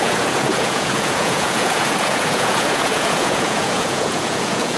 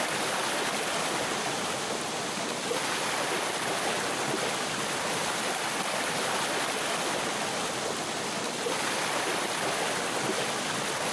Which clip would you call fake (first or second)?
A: first